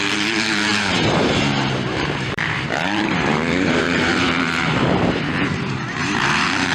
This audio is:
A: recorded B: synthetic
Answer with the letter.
B